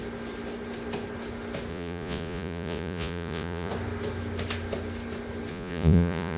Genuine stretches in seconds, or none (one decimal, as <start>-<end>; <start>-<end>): 0.0-1.7; 3.7-5.5